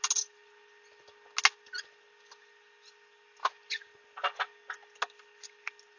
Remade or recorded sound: recorded